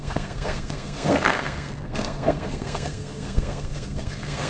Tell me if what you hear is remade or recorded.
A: remade